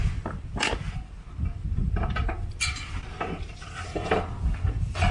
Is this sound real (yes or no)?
yes